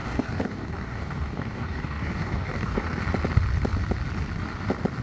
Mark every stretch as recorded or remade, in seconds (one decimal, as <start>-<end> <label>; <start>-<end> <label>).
0.0-3.0 remade; 3.0-5.0 recorded